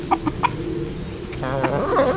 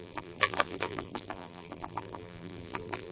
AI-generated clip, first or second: second